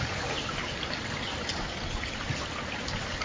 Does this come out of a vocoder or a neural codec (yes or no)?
no